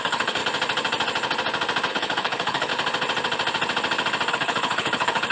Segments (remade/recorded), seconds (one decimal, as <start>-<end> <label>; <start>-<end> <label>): 0.0-0.4 remade; 0.4-1.9 recorded; 1.9-2.7 remade; 2.7-4.3 recorded; 4.3-5.3 remade